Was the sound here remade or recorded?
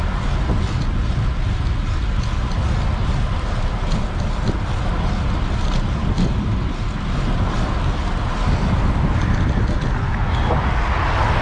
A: recorded